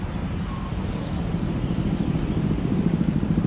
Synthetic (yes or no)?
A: yes